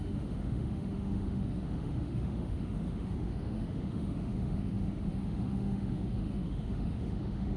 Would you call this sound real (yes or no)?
no